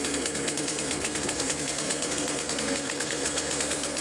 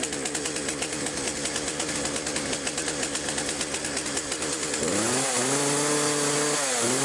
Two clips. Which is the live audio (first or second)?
second